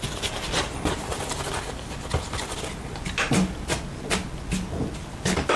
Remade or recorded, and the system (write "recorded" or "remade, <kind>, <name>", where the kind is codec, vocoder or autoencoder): recorded